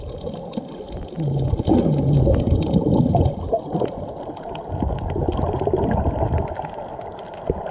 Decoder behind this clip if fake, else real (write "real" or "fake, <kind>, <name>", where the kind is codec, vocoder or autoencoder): real